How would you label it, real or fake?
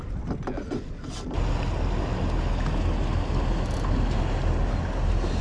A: real